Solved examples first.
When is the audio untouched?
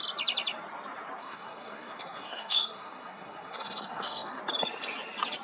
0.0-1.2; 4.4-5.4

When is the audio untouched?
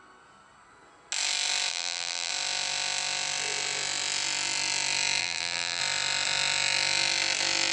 0.0-1.7; 2.3-5.2; 5.8-7.7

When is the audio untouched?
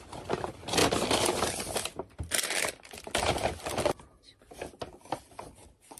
0.0-6.0